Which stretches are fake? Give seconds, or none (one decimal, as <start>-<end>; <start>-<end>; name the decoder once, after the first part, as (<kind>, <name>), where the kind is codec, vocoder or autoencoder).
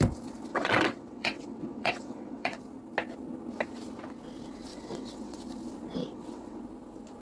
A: 0.5-2.6 (vocoder, WaveNeXt); 4.7-5.4; 6.0-6.6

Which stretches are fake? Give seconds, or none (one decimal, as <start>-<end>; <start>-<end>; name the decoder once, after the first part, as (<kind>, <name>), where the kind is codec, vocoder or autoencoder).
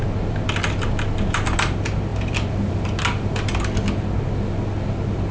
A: none